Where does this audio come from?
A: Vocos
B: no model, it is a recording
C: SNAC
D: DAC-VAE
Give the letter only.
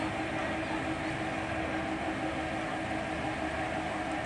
B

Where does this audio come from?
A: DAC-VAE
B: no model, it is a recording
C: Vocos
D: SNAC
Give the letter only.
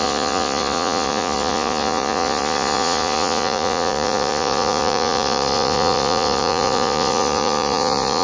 C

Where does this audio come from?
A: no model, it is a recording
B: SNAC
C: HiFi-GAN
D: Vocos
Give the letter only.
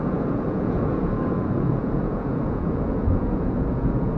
D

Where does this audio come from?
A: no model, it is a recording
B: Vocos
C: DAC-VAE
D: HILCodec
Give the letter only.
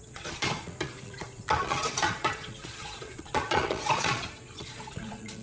B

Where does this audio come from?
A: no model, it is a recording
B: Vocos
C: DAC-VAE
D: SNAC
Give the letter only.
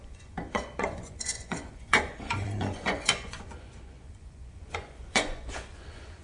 B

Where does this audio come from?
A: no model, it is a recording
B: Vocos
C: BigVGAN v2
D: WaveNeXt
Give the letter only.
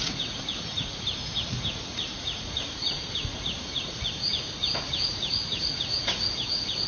B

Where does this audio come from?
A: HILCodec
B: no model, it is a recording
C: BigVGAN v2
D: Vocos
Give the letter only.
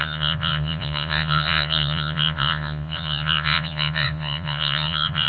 D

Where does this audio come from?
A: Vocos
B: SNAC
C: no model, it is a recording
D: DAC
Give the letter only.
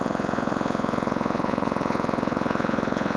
A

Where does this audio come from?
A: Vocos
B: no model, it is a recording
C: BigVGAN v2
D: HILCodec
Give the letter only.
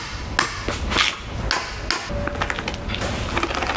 B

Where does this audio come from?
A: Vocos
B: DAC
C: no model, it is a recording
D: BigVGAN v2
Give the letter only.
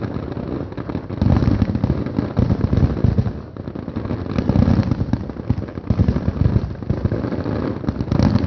C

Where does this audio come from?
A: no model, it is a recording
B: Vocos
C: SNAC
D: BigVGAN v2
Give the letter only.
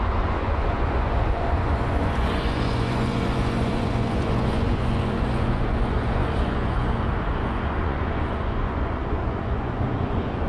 B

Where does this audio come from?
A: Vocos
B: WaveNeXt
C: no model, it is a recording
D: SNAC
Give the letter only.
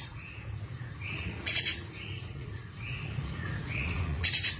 A